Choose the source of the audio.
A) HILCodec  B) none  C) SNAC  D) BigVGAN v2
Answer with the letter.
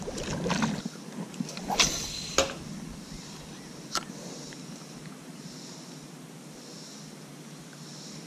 B